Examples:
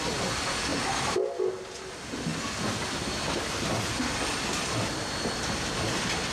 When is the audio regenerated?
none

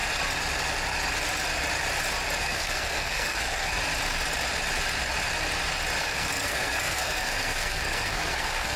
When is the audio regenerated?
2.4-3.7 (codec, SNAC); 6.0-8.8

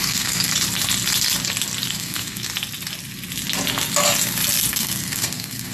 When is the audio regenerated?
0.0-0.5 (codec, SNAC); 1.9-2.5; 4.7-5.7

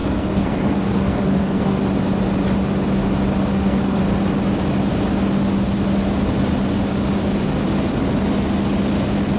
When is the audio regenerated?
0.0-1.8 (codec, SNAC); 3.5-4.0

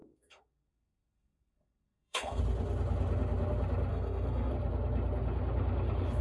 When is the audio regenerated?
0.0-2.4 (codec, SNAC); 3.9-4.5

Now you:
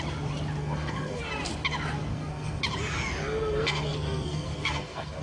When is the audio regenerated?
0.6-1.2 (codec, SNAC); 2.1-2.6; 3.2-5.2